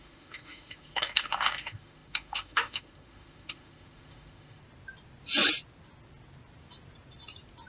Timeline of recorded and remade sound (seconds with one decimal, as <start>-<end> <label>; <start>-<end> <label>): 0.0-4.6 remade; 4.6-7.7 recorded